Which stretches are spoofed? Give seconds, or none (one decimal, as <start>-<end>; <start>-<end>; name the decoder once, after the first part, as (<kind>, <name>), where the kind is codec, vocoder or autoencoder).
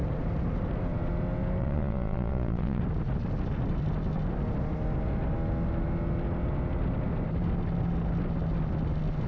1.6-2.8 (vocoder, Vocos)